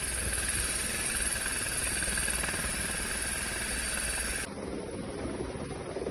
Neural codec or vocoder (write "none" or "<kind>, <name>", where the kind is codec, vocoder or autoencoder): none